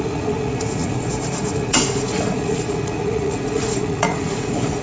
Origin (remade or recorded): remade